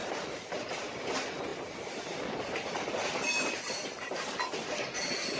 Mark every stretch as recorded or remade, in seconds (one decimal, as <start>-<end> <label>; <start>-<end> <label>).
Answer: 0.0-1.1 remade; 1.1-5.4 recorded